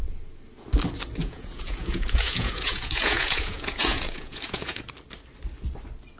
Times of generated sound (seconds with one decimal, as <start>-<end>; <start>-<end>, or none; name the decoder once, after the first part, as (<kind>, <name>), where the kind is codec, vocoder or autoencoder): 1.2-4.9 (vocoder, Vocos)